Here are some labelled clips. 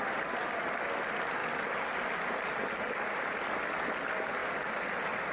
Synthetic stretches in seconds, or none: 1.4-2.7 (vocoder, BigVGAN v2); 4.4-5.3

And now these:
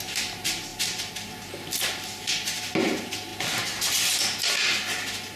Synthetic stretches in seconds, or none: none

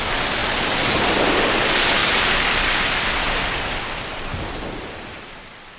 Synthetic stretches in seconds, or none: 2.0-2.7 (vocoder, BigVGAN v2); 4.3-4.9

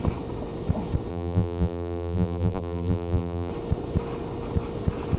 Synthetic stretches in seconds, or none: 1.1-3.5 (vocoder, BigVGAN v2)

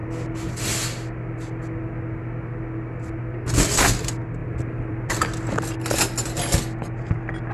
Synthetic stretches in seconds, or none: 4.4-5.1 (vocoder, BigVGAN v2)

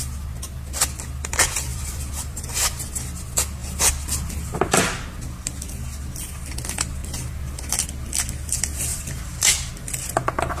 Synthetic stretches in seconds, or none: 1.7-2.4 (vocoder, BigVGAN v2); 7.0-7.8; 8.9-9.7

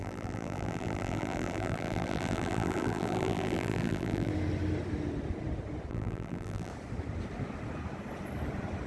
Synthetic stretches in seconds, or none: 0.0-4.3 (vocoder, BigVGAN v2); 5.9-6.7

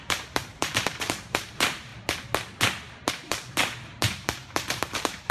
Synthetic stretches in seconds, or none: 0.0-1.9 (vocoder, BigVGAN v2); 3.1-5.3